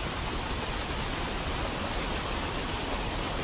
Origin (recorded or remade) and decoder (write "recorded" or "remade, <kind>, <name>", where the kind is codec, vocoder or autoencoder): recorded